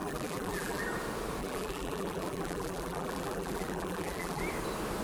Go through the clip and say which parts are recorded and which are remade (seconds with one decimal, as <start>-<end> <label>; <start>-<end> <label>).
0.0-0.8 remade; 0.8-1.4 recorded; 1.4-4.4 remade; 4.4-5.0 recorded